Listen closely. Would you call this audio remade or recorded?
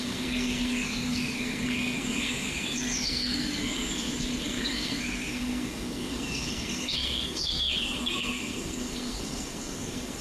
remade